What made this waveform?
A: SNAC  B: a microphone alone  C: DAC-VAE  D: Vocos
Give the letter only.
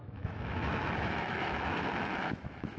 C